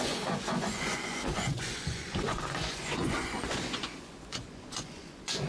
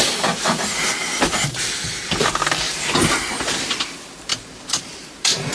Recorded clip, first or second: second